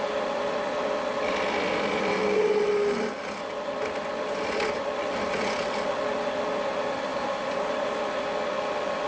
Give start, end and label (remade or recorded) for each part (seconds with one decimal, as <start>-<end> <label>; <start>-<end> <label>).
0.0-7.1 recorded; 7.1-7.9 remade; 7.9-9.1 recorded